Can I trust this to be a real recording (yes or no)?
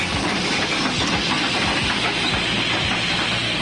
yes